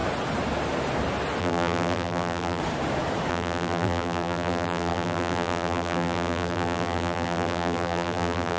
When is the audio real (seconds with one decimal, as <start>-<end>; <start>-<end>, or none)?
0.0-1.4; 2.6-3.3